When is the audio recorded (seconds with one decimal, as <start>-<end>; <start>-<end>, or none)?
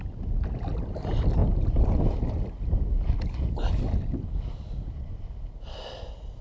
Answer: 0.0-6.4